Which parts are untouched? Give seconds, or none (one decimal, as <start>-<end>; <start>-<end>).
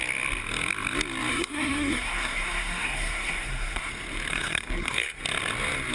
0.0-1.3; 3.9-4.3; 5.2-5.9